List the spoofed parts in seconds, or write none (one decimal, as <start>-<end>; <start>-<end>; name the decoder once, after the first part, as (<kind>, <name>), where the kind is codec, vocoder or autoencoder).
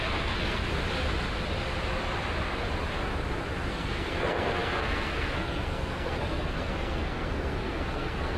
0.0-0.6 (codec, SNAC); 3.7-8.4